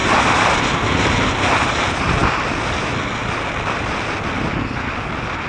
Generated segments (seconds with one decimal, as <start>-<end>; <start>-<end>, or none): 0.0-0.6